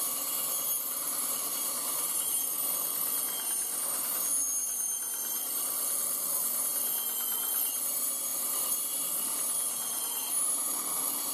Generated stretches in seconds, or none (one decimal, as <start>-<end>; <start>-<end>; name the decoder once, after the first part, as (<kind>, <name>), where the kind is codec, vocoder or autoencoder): none